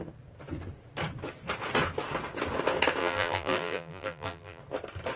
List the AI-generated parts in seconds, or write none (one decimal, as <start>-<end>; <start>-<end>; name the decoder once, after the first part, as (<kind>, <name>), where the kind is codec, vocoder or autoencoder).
3.0-4.6 (vocoder, BigVGAN v2)